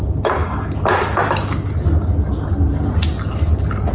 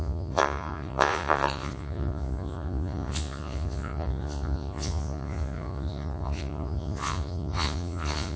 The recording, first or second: first